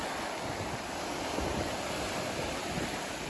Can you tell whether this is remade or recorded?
recorded